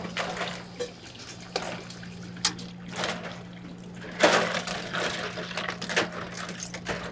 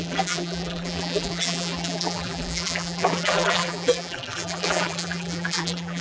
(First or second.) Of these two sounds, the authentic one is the first